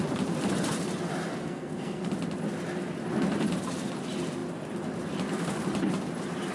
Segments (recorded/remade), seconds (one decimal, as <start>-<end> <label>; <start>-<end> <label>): 0.0-1.4 recorded; 1.4-2.1 remade; 2.1-6.5 recorded

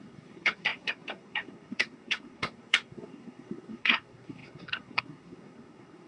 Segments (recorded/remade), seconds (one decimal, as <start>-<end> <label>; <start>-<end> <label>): 0.0-6.1 remade

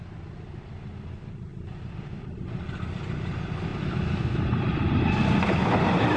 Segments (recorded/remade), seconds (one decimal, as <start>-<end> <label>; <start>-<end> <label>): 0.0-6.2 recorded

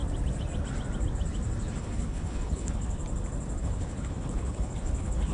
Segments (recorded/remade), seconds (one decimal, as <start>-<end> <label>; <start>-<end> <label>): 0.0-1.8 recorded; 1.8-3.0 remade; 3.0-3.6 recorded; 3.6-5.3 remade

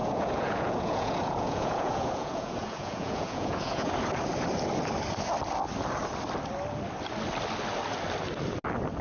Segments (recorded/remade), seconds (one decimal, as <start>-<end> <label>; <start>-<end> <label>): 0.0-3.9 remade; 3.9-9.0 recorded

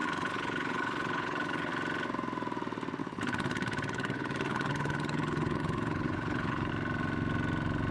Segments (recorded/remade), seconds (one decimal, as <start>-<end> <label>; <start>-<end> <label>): 0.0-1.7 remade; 1.7-3.0 recorded; 3.0-6.7 remade; 6.7-7.9 recorded

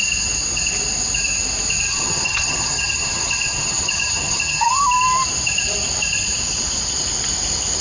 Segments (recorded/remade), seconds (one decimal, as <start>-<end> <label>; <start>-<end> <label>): 0.0-1.9 recorded; 1.9-4.8 remade; 4.8-7.8 recorded